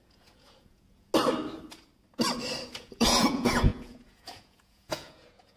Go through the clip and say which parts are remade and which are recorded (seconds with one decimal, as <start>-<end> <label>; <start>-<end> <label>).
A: 0.0-1.1 remade; 1.1-2.8 recorded; 2.8-5.6 remade